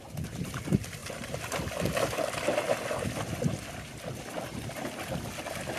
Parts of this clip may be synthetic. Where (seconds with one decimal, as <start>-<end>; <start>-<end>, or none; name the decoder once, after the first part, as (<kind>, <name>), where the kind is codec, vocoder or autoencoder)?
none